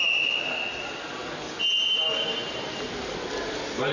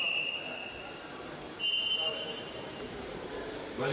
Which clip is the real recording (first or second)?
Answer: first